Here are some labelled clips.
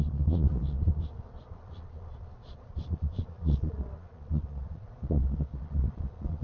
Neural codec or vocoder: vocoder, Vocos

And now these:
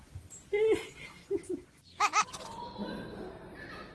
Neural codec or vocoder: none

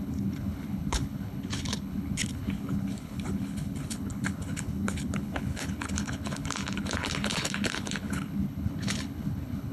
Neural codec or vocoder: codec, HILCodec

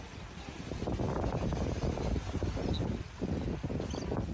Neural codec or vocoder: none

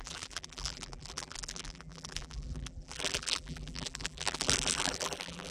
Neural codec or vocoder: vocoder, BigVGAN v2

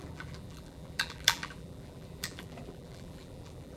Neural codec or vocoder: vocoder, BigVGAN v2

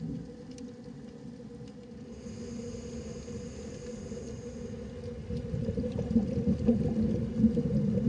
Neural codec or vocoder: none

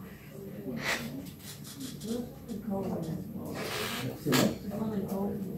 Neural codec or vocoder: none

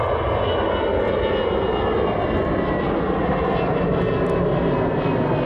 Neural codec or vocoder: none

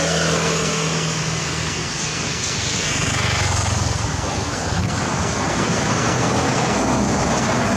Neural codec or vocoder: codec, SNAC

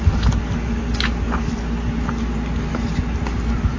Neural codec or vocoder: none